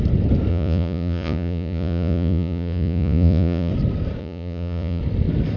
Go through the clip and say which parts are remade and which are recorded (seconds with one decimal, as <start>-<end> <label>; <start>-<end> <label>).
0.0-0.5 recorded; 0.5-3.7 remade; 3.7-4.2 recorded; 4.2-5.0 remade; 5.0-5.6 recorded